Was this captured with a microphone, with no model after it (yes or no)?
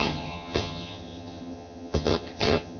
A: no